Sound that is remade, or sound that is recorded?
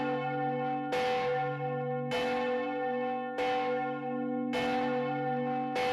recorded